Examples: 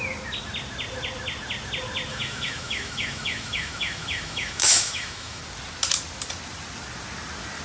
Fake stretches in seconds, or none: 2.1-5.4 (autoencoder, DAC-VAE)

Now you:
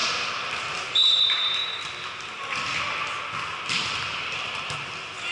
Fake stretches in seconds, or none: none

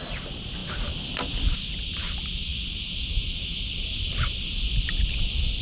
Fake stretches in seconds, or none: none